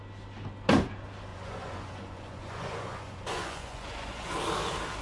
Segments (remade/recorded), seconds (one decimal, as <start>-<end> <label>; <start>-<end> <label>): 0.0-1.3 recorded; 1.3-4.3 remade; 4.3-5.0 recorded